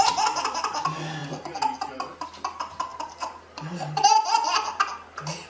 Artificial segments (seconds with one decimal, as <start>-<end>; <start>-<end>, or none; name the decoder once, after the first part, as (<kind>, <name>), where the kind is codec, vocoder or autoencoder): 2.9-4.8 (vocoder, BigVGAN v2)